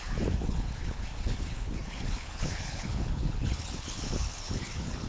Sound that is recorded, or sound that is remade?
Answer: remade